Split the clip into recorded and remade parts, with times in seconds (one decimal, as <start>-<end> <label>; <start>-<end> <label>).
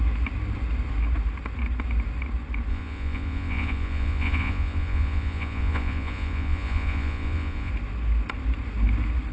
0.0-2.7 recorded; 2.7-7.7 remade; 7.7-9.3 recorded